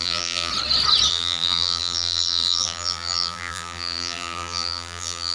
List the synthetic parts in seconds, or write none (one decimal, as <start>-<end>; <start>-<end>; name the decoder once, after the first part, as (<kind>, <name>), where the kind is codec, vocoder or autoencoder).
0.0-0.5 (vocoder, BigVGAN v2); 1.1-5.3

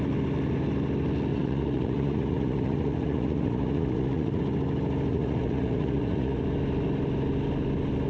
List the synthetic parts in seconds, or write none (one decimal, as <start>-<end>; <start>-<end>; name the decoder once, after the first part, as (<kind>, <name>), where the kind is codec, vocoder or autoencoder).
1.3-4.4 (vocoder, Vocos); 5.1-6.4

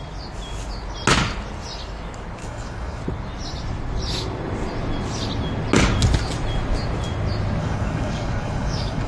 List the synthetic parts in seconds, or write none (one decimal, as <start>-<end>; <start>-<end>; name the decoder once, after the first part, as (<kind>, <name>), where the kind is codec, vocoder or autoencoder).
2.4-3.0 (codec, DAC); 7.6-9.1

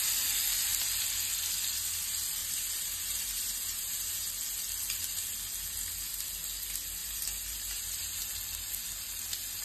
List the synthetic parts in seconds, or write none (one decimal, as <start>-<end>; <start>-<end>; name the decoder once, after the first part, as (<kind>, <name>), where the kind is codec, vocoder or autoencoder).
2.4-4.3 (vocoder, BigVGAN v2); 7.0-8.2